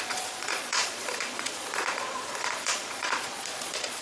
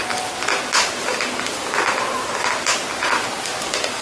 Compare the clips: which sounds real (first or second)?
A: second